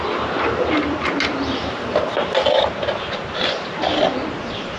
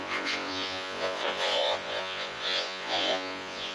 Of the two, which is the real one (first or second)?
first